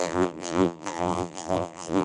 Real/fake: fake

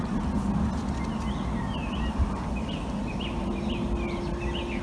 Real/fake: real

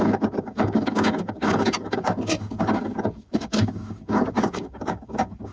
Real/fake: fake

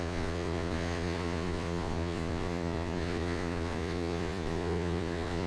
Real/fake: fake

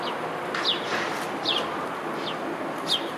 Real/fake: real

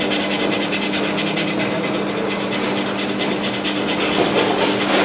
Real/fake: real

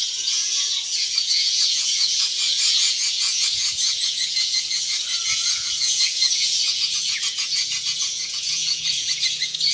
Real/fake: fake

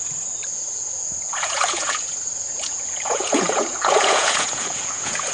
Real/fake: fake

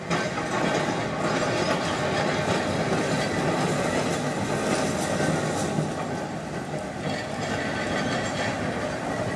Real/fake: real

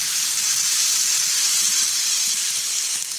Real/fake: fake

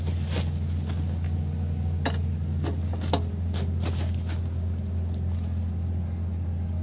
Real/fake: real